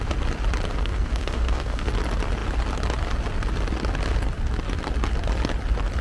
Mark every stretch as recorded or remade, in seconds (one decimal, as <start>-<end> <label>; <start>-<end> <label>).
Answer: 0.0-0.8 recorded; 0.8-1.9 remade; 1.9-6.0 recorded